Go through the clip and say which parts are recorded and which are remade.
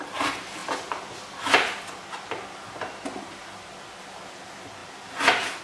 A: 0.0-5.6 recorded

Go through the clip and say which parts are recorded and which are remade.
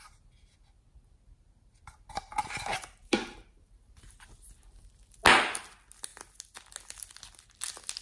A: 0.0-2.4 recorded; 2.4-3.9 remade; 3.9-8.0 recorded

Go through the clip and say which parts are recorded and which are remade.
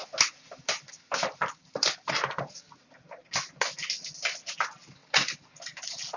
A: 0.0-2.4 recorded; 2.4-3.2 remade; 3.2-3.9 recorded; 3.9-5.0 remade; 5.0-5.6 recorded; 5.6-6.2 remade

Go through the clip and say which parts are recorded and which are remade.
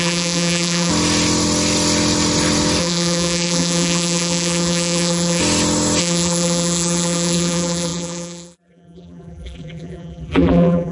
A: 0.0-0.9 remade; 0.9-2.8 recorded; 2.8-5.4 remade; 5.4-6.0 recorded; 6.0-10.9 remade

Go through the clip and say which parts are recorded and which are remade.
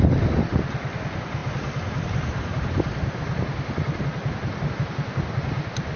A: 0.0-6.0 recorded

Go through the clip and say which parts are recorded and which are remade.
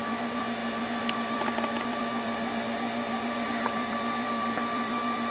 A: 0.0-5.3 remade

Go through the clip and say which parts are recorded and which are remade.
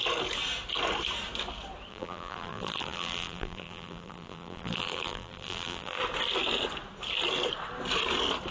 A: 0.0-1.9 recorded; 1.9-6.0 remade; 6.0-8.5 recorded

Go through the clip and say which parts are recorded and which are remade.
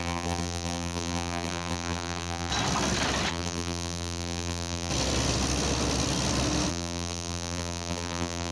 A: 0.0-2.5 remade; 2.5-3.3 recorded; 3.3-4.9 remade; 4.9-6.7 recorded; 6.7-8.5 remade